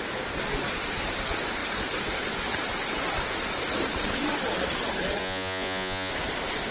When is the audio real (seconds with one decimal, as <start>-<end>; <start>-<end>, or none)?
0.0-5.2; 6.1-6.7